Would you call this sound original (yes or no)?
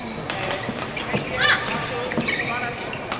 yes